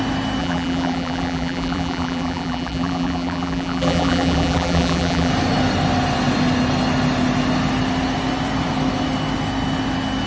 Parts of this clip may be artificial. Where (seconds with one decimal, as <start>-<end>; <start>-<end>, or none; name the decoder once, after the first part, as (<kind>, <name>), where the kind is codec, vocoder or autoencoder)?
0.4-5.3 (vocoder, BigVGAN v2)